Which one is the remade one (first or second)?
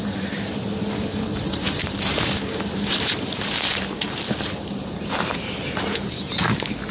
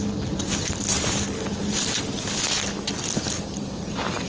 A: first